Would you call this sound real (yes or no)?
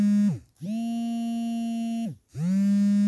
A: yes